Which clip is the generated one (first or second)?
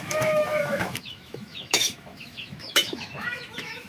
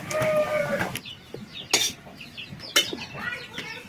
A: first